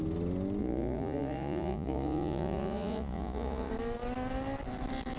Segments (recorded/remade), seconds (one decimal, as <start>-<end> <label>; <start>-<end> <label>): 0.0-0.6 recorded; 0.6-3.7 remade; 3.7-5.2 recorded